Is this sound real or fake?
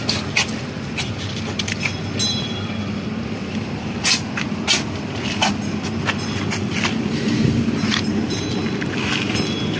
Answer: real